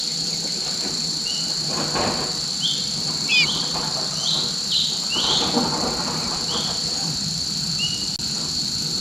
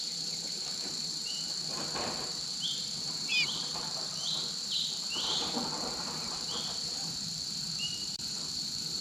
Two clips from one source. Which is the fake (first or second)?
second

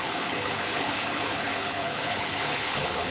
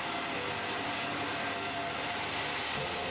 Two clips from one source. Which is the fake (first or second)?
first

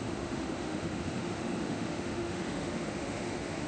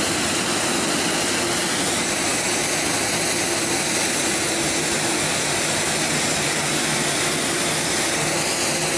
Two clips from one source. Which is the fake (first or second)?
first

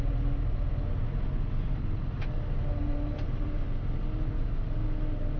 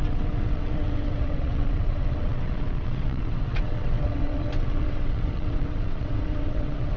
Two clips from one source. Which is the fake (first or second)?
second